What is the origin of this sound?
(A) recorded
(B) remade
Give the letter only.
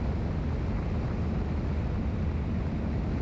A